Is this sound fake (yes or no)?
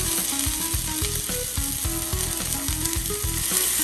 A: no